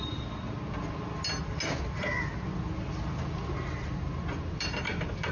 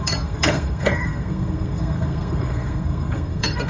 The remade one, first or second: second